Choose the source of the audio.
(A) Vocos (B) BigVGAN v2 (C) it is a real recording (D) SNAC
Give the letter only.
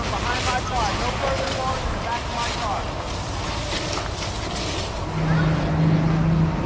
C